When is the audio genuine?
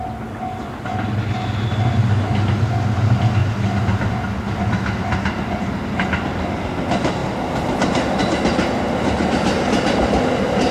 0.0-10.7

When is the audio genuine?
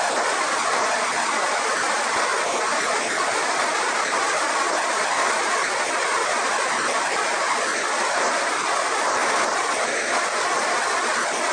0.0-9.2; 10.6-11.5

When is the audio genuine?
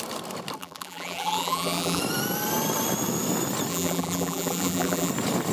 0.0-0.6; 2.0-3.7; 5.1-5.5